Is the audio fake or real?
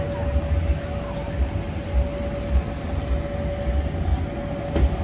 real